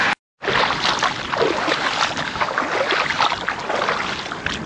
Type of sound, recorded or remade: recorded